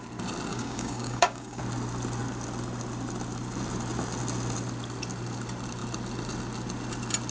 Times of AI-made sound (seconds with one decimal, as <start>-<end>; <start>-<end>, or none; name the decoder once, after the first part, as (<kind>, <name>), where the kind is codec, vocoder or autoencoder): 0.5-1.6 (codec, DAC)